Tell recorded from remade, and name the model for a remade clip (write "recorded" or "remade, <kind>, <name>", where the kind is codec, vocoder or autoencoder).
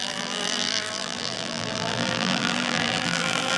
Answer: remade, vocoder, BigVGAN v2